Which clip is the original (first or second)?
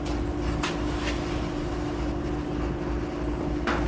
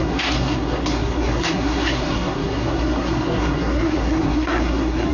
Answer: first